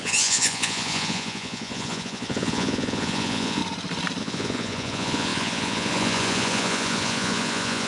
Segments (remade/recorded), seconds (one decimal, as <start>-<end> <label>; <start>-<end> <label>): 0.0-3.6 remade; 3.6-4.2 recorded; 4.2-7.9 remade